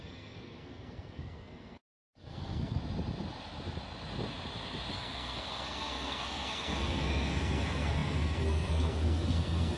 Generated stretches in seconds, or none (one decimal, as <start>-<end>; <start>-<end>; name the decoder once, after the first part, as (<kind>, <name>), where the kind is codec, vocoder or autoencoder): 0.0-2.8 (codec, SNAC); 4.9-9.8